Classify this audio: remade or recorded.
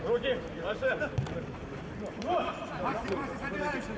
remade